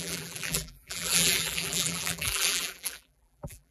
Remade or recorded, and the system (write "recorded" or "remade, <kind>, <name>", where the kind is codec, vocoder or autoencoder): remade, vocoder, BigVGAN v2